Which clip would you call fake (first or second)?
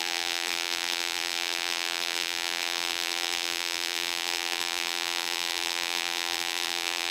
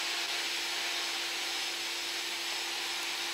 first